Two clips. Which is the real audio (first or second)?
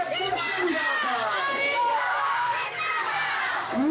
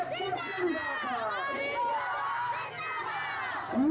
second